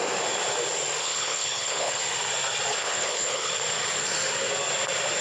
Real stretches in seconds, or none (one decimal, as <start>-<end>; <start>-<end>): 0.0-1.0; 2.0-2.7; 3.5-5.2